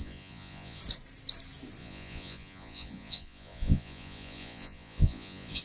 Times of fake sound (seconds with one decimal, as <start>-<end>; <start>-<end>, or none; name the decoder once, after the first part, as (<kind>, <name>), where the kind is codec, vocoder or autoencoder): 0.0-0.8 (vocoder, Vocos); 1.8-5.6